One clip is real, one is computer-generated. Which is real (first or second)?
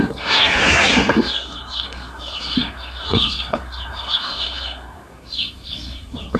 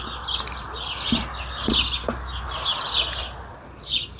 second